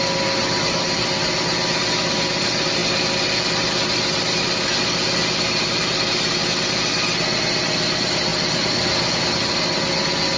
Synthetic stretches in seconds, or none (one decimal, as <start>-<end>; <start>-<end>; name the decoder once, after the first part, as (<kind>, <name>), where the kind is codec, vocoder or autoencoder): none